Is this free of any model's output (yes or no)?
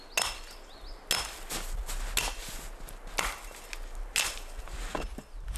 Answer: yes